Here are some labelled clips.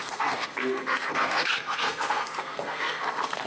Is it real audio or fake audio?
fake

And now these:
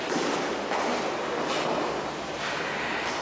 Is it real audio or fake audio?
real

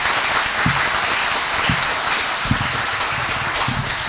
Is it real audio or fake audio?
real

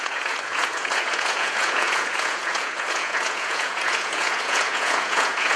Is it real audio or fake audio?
fake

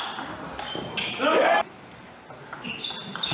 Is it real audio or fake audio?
real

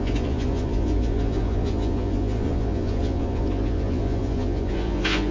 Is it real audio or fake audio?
fake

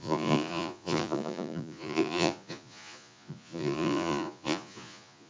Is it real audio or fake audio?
fake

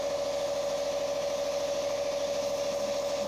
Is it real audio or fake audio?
real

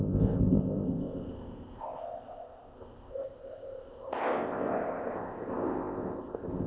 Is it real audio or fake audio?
fake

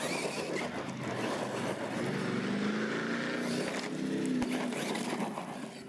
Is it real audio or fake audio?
real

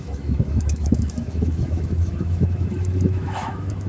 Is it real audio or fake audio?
fake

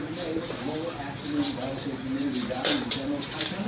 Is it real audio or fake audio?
real